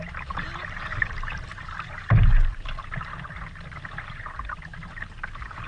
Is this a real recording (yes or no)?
yes